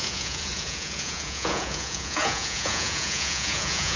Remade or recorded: remade